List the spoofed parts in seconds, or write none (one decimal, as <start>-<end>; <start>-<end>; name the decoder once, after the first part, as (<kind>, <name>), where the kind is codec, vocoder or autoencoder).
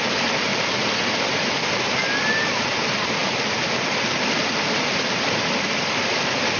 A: 0.5-2.2 (vocoder, BigVGAN v2)